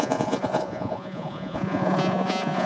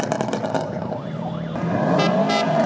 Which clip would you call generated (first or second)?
first